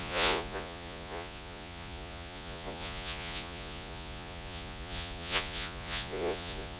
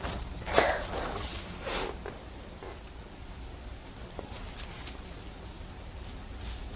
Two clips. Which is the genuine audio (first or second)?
second